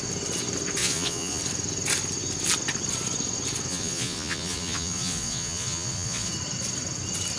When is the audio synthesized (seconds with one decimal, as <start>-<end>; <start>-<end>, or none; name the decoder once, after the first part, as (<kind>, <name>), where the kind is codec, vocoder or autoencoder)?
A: 0.8-1.4 (vocoder, Vocos); 3.7-6.3